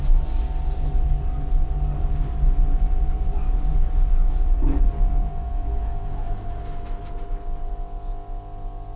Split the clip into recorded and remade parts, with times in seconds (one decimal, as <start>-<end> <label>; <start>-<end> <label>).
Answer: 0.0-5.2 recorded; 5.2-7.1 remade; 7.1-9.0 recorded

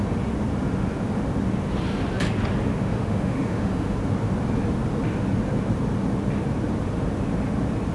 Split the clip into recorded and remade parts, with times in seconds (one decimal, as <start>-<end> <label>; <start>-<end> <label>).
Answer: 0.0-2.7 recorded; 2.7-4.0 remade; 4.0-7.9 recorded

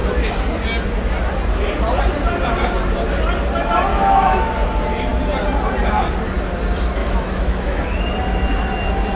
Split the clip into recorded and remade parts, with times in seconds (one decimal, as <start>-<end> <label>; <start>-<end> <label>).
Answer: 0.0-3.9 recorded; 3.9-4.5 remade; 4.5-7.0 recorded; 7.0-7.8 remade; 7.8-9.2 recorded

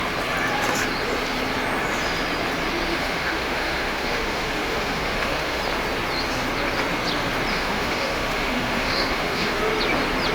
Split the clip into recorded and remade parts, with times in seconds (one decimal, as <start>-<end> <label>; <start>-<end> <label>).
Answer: 0.0-2.9 recorded; 2.9-5.6 remade; 5.6-7.5 recorded; 7.5-9.6 remade; 9.6-10.3 recorded

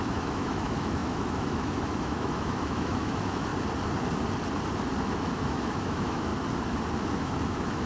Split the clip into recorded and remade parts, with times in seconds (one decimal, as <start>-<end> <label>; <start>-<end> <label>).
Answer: 0.0-3.5 remade; 3.5-5.0 recorded; 5.0-6.3 remade; 6.3-7.1 recorded; 7.1-7.9 remade

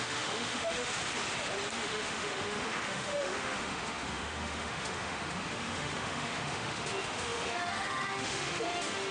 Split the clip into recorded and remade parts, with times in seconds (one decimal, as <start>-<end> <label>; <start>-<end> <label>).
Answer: 0.0-1.0 remade; 1.0-1.7 recorded; 1.7-9.1 remade